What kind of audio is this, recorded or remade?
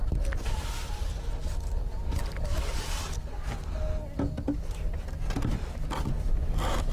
recorded